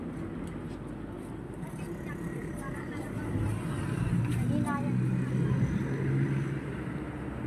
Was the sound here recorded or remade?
recorded